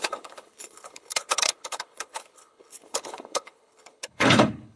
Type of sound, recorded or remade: remade